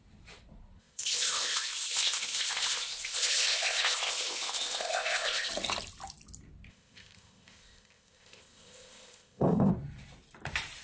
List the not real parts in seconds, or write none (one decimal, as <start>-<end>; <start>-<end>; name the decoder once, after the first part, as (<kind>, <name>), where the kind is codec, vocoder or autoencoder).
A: 0.8-5.5 (codec, ZipCodec); 6.7-9.7